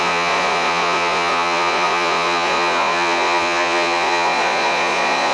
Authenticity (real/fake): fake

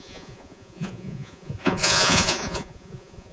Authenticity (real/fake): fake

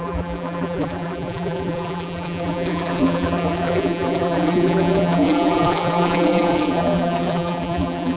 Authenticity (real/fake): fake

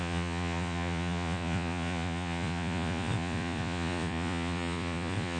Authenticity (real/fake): fake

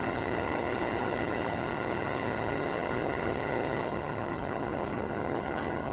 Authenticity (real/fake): fake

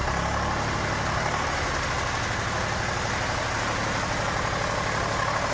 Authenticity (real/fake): real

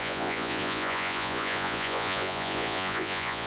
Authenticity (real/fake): fake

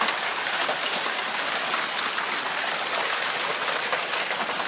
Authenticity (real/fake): real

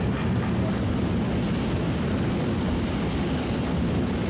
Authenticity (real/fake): real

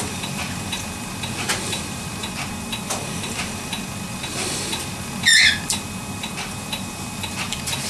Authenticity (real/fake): fake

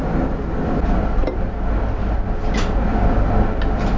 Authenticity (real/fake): real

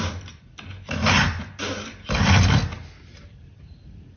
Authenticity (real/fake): real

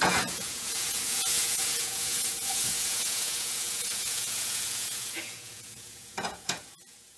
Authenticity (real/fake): fake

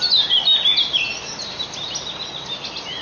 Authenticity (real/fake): real